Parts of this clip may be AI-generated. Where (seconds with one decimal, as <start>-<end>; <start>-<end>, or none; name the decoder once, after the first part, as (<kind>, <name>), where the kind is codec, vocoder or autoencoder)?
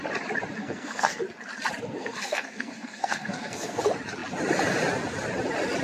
0.6-1.2 (codec, SNAC); 1.9-3.8